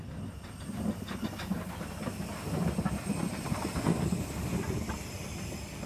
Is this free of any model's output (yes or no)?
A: yes